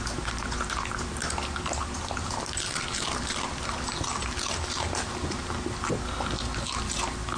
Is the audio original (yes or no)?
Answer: yes